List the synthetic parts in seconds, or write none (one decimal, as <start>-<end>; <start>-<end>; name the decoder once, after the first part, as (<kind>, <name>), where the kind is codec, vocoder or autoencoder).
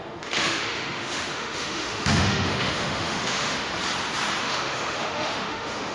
0.0-3.7 (autoencoder, DAC-VAE); 4.4-5.9